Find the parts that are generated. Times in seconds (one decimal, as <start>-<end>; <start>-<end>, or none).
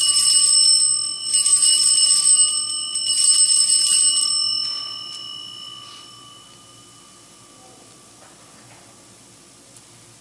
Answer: none